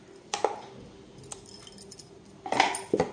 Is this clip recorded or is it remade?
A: recorded